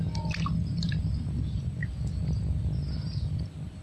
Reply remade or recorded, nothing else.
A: recorded